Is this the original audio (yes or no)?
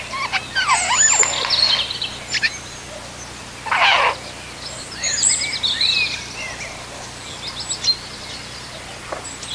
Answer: yes